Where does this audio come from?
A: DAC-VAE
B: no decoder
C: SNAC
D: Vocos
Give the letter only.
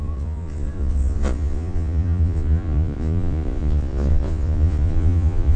D